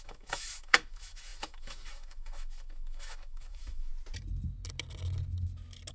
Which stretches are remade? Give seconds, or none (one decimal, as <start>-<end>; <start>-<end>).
0.0-3.9